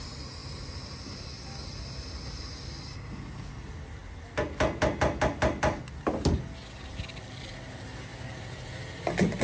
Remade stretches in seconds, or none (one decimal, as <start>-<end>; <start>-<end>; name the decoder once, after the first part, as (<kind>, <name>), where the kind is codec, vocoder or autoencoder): none